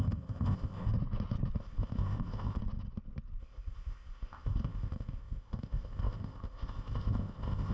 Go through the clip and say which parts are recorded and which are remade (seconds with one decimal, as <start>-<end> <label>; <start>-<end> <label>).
0.0-0.9 remade; 0.9-1.6 recorded; 1.6-2.6 remade; 2.6-3.4 recorded; 3.4-7.7 remade